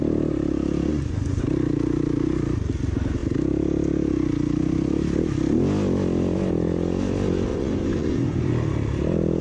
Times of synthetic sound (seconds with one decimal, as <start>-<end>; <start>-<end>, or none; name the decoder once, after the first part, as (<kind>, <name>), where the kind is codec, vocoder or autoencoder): 0.9-1.4 (vocoder, Vocos); 7.5-8.5

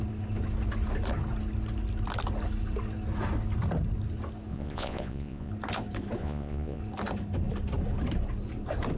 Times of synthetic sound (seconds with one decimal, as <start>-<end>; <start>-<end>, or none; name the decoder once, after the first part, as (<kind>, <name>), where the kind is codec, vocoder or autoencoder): 4.5-5.5 (vocoder, Vocos); 6.2-6.8

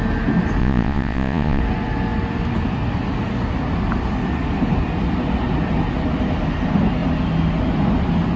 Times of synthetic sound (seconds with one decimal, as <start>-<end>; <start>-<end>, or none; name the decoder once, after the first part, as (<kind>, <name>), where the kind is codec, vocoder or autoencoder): 0.6-1.6 (vocoder, Vocos)

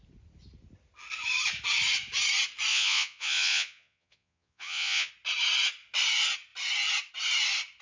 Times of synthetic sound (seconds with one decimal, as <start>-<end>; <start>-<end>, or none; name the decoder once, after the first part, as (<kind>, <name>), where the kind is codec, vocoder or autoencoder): 2.7-5.1 (vocoder, Vocos)

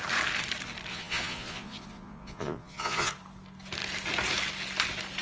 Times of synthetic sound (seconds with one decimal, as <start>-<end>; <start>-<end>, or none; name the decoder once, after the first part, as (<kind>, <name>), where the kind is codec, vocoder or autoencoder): 0.9-3.1 (vocoder, Vocos)

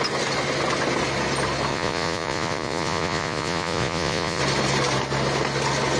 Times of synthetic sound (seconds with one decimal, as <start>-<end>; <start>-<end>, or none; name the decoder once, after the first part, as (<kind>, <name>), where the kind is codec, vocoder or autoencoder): 1.7-4.4 (vocoder, Vocos)